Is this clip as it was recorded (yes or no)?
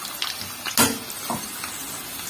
yes